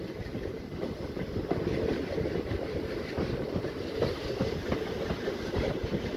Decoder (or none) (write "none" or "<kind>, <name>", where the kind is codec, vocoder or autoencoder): none